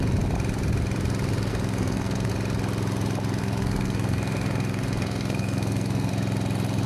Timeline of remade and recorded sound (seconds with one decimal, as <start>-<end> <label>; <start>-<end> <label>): 0.0-1.5 recorded; 1.5-2.3 remade; 2.3-3.4 recorded; 3.4-6.1 remade; 6.1-6.9 recorded